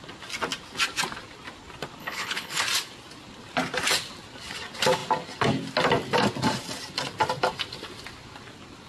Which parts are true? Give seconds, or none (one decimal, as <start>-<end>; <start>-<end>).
0.0-2.0; 2.6-8.9